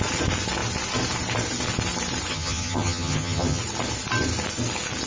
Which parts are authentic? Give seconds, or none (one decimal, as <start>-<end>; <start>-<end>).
0.0-2.3; 3.6-5.1